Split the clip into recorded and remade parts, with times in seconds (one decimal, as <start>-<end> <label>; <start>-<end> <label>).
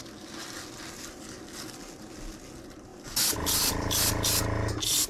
0.0-2.9 recorded; 2.9-5.1 remade